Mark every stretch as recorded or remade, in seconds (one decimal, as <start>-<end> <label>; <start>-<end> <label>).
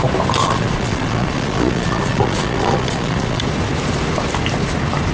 0.0-0.4 recorded; 0.4-3.4 remade; 3.4-5.1 recorded